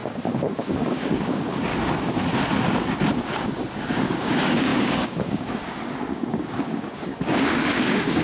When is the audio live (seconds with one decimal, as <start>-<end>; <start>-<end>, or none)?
1.7-3.9